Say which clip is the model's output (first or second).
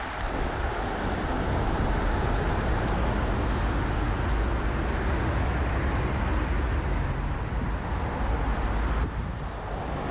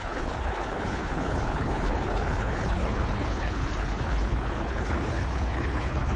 second